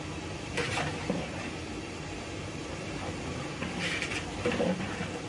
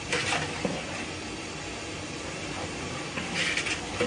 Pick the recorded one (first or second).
second